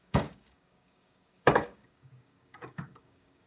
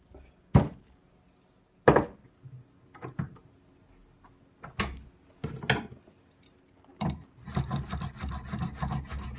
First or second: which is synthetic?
first